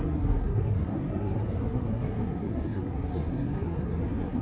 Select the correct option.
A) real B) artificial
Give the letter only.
B